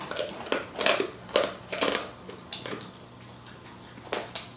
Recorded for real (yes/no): yes